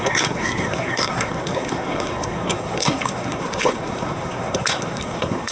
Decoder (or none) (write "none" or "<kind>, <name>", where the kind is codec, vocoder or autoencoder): codec, SNAC